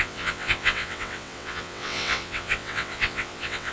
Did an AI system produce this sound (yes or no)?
yes